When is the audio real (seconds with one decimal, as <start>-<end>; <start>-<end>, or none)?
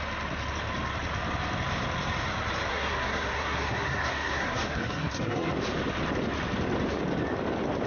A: 0.0-2.7; 5.5-7.9